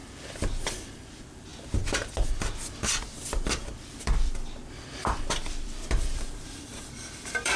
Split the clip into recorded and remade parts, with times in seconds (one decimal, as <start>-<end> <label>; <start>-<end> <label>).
0.0-1.5 remade; 1.5-3.0 recorded; 3.0-7.6 remade